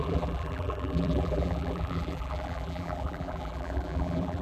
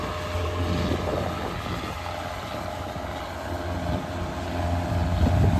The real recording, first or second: second